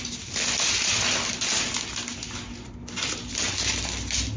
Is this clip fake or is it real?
real